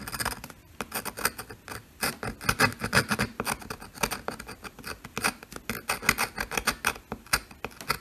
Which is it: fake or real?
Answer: real